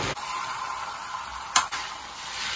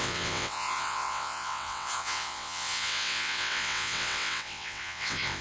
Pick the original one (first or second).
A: first